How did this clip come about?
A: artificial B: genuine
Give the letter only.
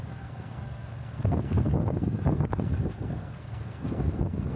A